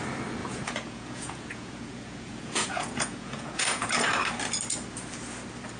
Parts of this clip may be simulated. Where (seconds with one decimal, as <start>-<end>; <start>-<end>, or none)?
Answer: 0.4-3.9